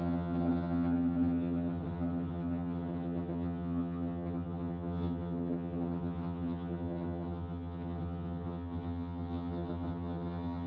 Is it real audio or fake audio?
fake